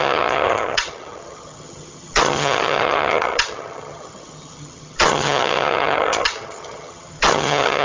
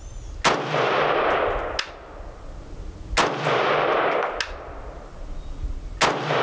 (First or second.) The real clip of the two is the second